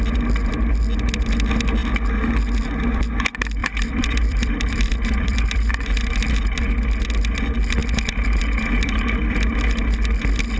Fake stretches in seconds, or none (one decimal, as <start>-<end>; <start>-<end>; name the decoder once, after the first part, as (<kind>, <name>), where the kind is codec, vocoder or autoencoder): 3.6-5.7 (vocoder, BigVGAN v2)